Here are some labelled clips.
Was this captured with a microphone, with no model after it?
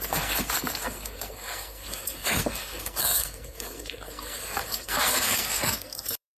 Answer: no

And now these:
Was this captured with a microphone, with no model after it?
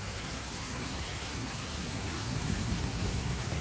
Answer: no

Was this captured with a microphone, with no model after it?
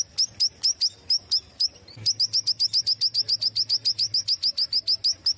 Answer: yes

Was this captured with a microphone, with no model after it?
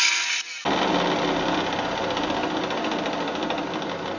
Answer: yes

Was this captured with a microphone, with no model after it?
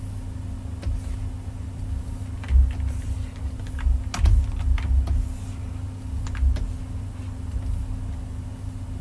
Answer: yes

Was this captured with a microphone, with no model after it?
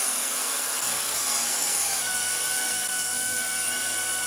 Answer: no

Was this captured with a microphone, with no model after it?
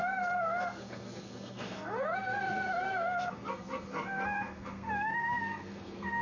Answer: no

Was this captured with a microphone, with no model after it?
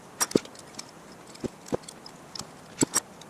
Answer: yes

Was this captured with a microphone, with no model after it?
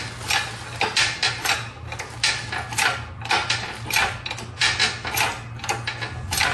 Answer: yes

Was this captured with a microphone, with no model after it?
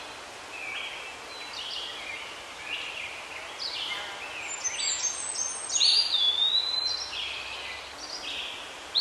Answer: yes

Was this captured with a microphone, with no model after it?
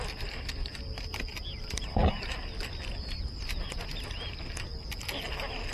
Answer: yes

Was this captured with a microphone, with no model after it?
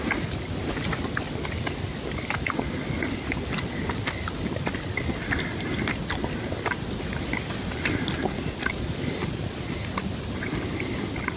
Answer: yes